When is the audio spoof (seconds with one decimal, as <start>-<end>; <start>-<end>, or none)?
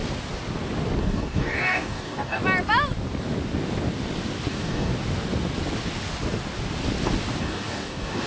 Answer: 1.0-2.4; 4.5-4.9; 7.4-8.3